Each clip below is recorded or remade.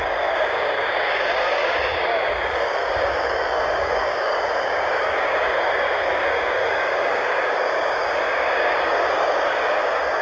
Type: remade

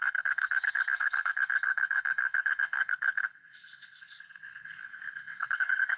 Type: remade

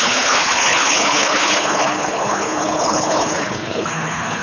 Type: remade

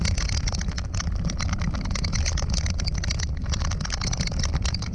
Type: recorded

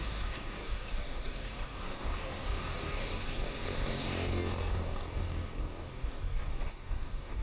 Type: remade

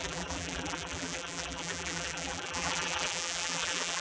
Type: remade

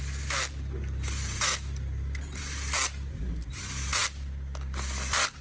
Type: recorded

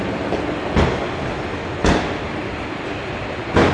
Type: recorded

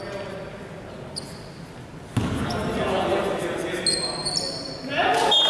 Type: recorded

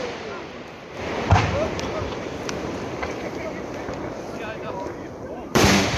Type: remade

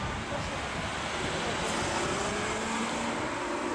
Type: recorded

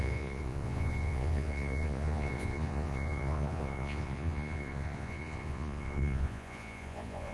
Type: remade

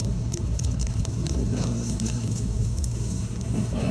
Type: remade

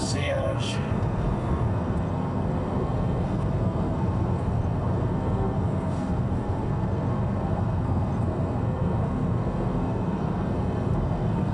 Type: remade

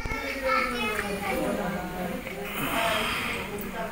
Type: recorded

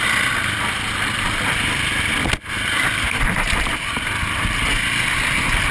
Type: recorded